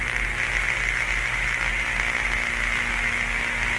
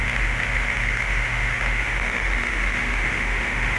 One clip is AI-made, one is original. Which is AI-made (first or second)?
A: second